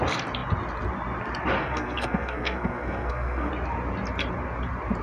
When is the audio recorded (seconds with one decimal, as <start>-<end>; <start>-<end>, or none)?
0.0-1.6; 3.5-5.0

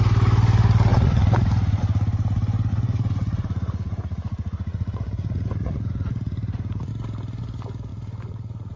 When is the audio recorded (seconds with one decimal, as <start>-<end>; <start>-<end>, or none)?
0.0-0.9; 1.8-2.7; 6.9-7.9

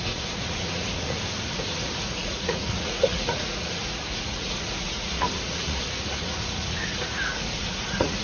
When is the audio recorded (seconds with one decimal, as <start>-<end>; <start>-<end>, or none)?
none

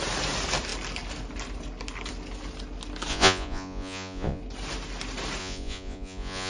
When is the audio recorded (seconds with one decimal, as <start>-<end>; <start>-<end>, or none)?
0.0-3.1; 4.4-5.4

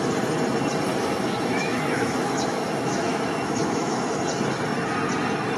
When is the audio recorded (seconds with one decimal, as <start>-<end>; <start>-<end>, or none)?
0.0-0.9; 4.3-5.6